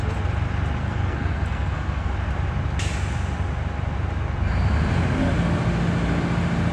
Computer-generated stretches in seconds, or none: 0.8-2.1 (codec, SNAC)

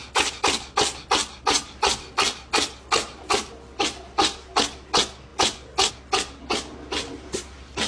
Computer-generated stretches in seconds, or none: none

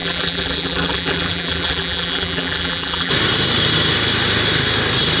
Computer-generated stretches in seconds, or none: 0.0-3.1 (vocoder, BigVGAN v2)

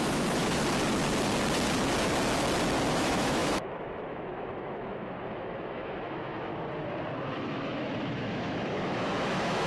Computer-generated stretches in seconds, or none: 0.0-0.6 (autoencoder, DAC-VAE); 2.9-6.5; 7.3-9.7